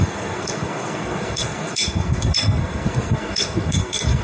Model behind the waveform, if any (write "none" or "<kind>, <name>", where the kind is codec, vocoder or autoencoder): codec, SNAC